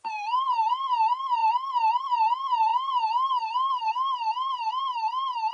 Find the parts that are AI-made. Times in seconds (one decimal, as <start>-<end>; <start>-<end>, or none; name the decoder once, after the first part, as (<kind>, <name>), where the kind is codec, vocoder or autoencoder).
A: 0.0-1.4 (vocoder, BigVGAN v2); 2.0-5.5